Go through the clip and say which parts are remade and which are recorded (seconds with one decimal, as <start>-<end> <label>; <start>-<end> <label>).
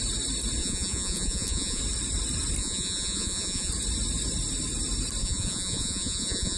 0.0-0.6 recorded; 0.6-1.8 remade; 1.8-2.6 recorded; 2.6-3.7 remade; 3.7-5.2 recorded; 5.2-6.6 remade